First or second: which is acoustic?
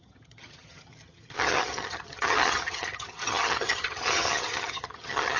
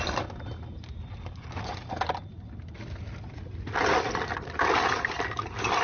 second